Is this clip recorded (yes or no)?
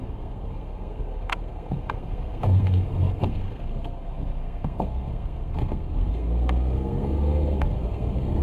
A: no